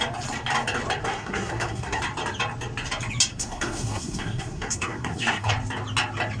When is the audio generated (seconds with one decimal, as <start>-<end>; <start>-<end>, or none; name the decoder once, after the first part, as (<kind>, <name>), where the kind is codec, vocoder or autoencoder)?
1.0-2.0 (codec, SNAC); 3.3-5.5

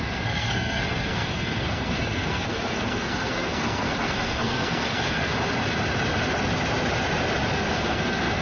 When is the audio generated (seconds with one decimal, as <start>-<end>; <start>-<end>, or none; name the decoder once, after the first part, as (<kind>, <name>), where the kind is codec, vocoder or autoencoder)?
0.0-5.3 (codec, SNAC); 7.7-8.4

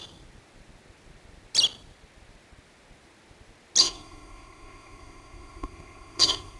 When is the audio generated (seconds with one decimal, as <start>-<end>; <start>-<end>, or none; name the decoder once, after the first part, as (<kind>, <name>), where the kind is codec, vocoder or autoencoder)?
3.8-6.6 (codec, SNAC)

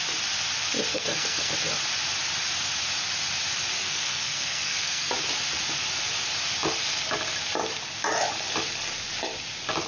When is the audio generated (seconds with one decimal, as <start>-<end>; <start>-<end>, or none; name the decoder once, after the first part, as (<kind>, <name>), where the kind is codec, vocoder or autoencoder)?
0.9-1.5 (codec, SNAC); 3.8-5.1

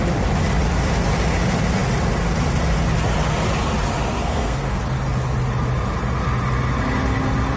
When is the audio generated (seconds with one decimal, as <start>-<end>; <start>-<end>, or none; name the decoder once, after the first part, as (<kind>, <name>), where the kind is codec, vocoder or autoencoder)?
4.2-4.8 (codec, SNAC)

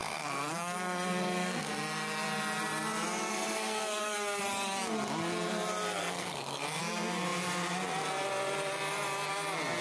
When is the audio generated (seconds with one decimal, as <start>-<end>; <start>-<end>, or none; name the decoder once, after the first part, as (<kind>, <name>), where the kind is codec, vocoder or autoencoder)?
0.0-1.7 (codec, SNAC); 3.3-4.4; 6.0-6.8

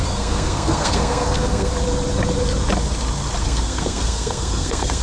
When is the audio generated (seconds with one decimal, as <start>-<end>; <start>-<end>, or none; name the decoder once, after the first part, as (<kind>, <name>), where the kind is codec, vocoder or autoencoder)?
0.0-1.7 (codec, SNAC); 3.4-5.0

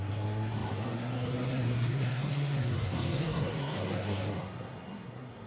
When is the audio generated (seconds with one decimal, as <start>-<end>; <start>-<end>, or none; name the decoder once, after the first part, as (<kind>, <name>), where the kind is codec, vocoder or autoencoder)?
0.0-5.5 (codec, SNAC)